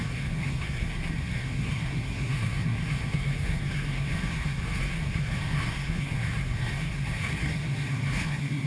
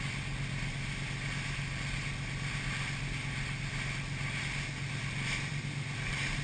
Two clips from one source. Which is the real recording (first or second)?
second